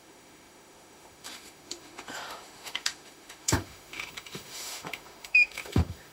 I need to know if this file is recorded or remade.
remade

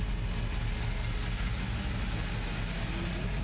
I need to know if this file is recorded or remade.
recorded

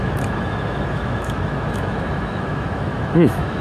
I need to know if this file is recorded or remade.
remade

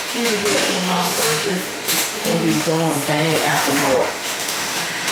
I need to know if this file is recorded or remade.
remade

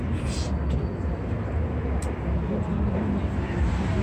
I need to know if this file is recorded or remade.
recorded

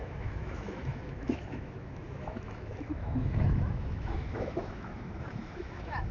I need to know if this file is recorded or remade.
remade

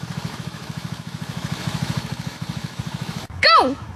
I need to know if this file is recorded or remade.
remade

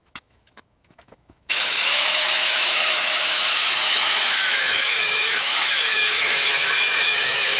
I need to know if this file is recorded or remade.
remade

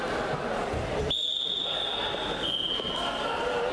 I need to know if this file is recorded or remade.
recorded